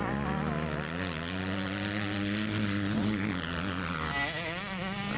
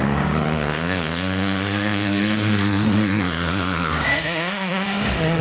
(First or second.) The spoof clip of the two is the second